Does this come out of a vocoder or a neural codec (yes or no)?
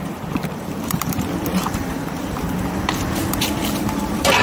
yes